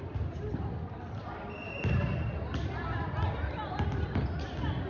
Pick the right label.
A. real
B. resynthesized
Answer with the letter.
A